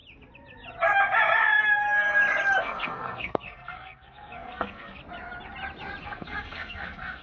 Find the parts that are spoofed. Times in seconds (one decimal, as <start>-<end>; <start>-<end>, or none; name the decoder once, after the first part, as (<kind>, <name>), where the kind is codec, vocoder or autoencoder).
2.6-5.0 (codec, SNAC); 6.0-7.2